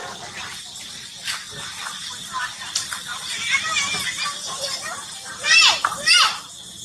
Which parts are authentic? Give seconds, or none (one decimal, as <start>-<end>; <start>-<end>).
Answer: 0.0-3.1; 6.2-6.8